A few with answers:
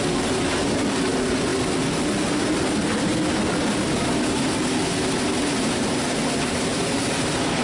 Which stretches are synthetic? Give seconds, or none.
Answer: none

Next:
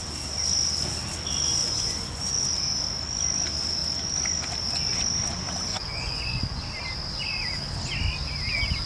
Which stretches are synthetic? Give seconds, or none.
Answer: 1.6-2.4; 5.7-6.6

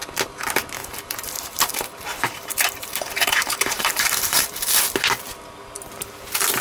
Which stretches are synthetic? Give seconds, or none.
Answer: 0.8-4.8